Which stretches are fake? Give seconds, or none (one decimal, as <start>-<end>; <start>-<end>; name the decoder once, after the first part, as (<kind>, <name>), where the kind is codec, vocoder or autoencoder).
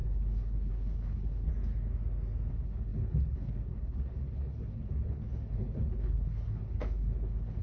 0.0-1.5 (codec, HILCodec); 2.5-7.6